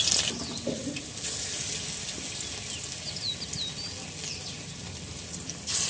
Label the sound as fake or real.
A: real